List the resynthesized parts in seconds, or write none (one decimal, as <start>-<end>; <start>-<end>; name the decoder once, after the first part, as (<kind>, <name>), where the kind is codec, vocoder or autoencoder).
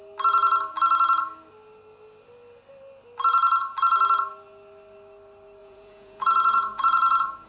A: 5.6-7.5 (vocoder, Vocos)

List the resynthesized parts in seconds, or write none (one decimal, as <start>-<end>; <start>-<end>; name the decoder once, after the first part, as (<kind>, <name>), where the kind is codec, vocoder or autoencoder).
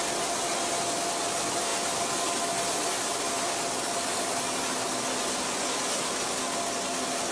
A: none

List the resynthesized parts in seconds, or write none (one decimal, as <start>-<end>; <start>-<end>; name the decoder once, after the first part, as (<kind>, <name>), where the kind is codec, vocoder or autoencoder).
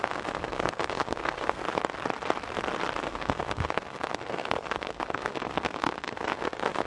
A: 0.0-1.6 (codec, SNAC); 3.0-6.9